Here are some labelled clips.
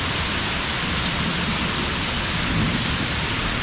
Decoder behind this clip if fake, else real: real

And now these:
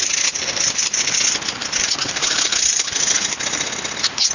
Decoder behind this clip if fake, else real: real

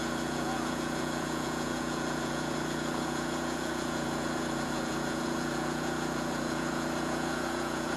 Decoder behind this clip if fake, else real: fake, vocoder, Vocos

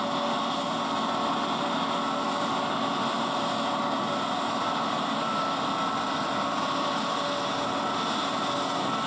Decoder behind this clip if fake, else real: real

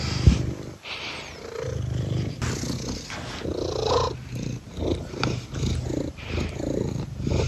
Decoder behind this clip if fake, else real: real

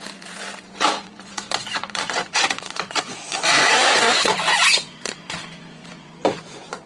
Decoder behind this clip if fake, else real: fake, vocoder, Vocos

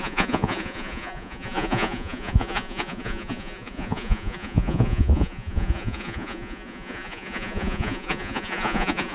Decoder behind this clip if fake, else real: fake, vocoder, Vocos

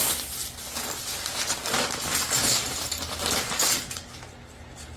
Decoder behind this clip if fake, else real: real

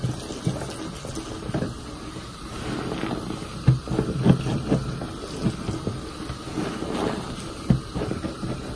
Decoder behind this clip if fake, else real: real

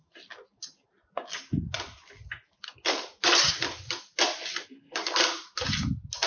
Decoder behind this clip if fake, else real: real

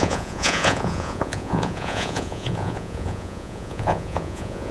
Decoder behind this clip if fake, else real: fake, vocoder, Vocos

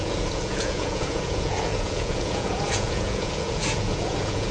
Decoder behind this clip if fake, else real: fake, vocoder, Vocos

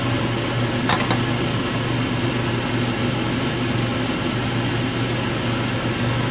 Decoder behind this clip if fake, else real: real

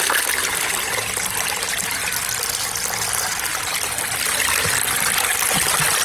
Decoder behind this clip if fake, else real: real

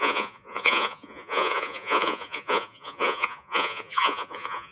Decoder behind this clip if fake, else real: fake, vocoder, Vocos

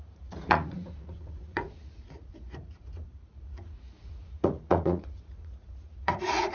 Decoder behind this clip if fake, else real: fake, vocoder, Vocos